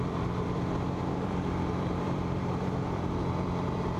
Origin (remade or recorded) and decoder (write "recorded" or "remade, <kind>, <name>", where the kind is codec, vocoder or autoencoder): remade, vocoder, BigVGAN v2